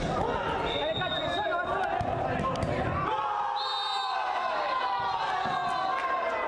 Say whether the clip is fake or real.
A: real